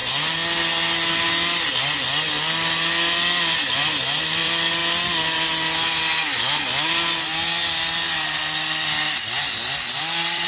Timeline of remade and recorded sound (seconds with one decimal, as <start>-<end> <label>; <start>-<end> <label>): 0.0-4.2 recorded; 4.2-4.8 remade; 4.8-10.0 recorded; 10.0-10.5 remade